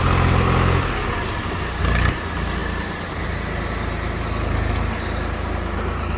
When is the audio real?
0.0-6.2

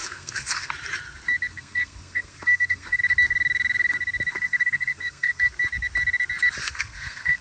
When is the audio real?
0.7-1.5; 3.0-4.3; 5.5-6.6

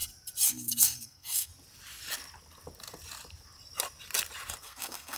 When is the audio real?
0.0-0.5; 1.5-4.6

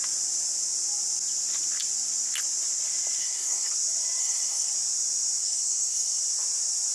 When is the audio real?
0.0-3.2; 3.7-4.2; 4.7-5.4; 6.2-6.9

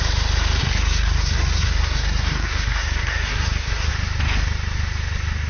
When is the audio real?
0.0-0.6; 3.9-5.5

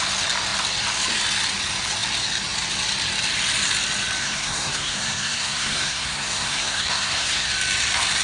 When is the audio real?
0.0-4.2; 7.5-8.2

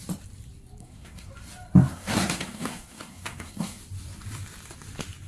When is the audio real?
0.0-0.8; 1.3-1.9; 3.8-5.3

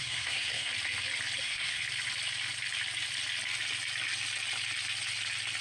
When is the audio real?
0.7-1.4; 1.8-5.6